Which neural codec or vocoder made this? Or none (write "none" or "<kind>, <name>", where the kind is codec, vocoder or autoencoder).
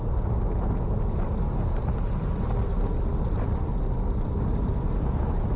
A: none